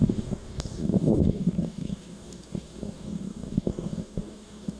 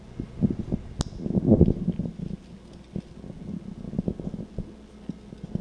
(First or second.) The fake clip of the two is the first